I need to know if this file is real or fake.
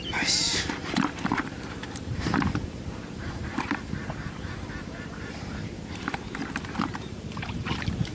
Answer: fake